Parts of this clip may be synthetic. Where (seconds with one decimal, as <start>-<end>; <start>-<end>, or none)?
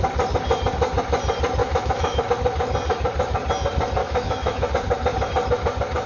1.6-2.3; 4.0-4.7